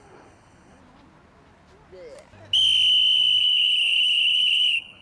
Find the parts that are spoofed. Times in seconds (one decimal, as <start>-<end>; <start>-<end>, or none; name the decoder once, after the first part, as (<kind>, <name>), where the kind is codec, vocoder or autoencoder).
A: 0.0-0.8 (codec, HILCodec); 3.4-5.0